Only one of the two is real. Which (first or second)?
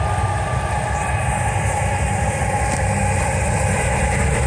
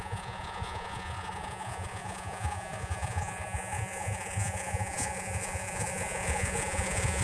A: first